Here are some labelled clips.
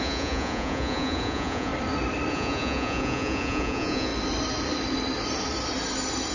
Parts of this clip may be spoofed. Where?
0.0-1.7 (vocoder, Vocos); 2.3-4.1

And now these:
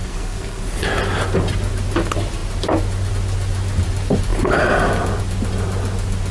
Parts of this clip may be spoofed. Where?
0.0-0.6 (codec, SNAC)

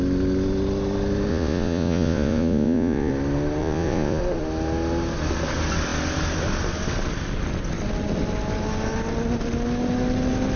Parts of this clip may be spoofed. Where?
1.3-3.1 (vocoder, Vocos); 3.6-4.2

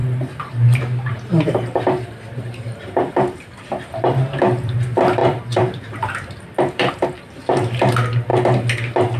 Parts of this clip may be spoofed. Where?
1.1-3.5 (vocoder, BigVGAN v2); 5.2-6.9

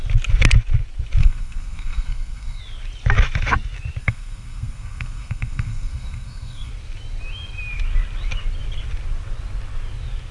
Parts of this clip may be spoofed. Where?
1.2-2.6 (codec, SNAC); 4.0-6.7

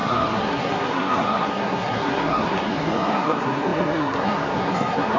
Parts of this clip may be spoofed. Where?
0.0-5.2 (codec, SNAC)